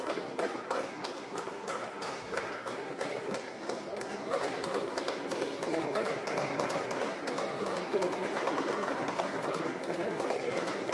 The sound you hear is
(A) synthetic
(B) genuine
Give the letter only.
A